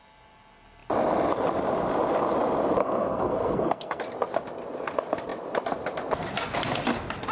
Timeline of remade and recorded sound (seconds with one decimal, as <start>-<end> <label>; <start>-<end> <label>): 0.0-2.8 recorded; 2.8-4.0 remade; 4.0-7.3 recorded